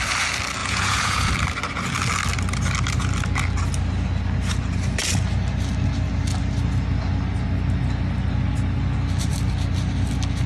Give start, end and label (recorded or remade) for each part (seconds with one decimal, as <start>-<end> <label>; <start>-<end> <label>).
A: 0.0-0.6 recorded; 0.6-1.3 remade; 1.3-10.5 recorded